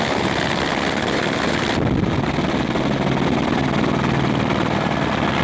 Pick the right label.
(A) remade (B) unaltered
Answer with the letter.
B